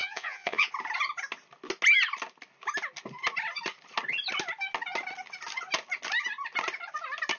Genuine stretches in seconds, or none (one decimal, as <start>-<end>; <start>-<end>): 0.7-7.4